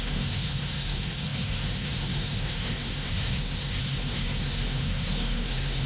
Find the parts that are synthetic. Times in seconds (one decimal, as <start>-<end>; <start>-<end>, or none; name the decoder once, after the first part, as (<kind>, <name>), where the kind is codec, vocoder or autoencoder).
0.0-5.9 (codec, SNAC)